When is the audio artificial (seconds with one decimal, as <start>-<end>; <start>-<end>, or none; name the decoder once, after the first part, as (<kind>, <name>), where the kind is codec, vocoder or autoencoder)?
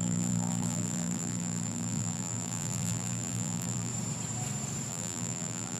0.0-3.9 (vocoder, BigVGAN v2); 4.9-5.8